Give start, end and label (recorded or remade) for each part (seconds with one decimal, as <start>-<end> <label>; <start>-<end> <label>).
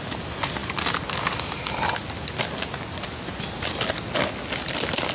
0.0-5.1 recorded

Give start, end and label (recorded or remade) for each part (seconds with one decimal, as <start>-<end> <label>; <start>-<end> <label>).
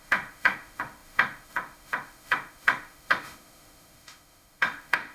0.0-5.1 remade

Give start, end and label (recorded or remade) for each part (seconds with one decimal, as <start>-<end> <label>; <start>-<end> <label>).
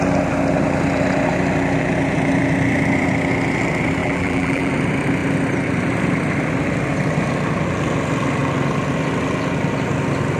0.0-4.0 recorded; 4.0-4.7 remade; 4.7-10.4 recorded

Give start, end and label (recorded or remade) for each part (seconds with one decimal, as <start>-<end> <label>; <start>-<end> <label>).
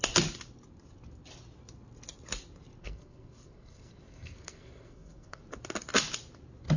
0.0-2.8 recorded; 2.8-5.4 remade; 5.4-6.8 recorded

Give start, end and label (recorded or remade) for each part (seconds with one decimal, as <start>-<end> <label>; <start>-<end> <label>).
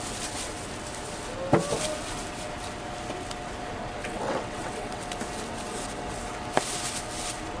0.0-4.0 recorded; 4.0-5.0 remade; 5.0-7.6 recorded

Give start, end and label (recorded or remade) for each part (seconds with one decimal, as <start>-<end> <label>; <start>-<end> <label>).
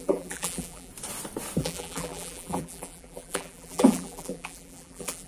0.0-0.9 remade; 0.9-1.6 recorded; 1.6-5.3 remade